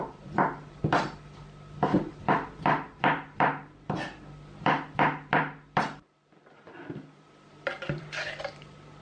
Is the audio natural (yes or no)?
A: no